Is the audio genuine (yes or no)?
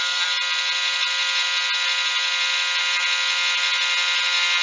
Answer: yes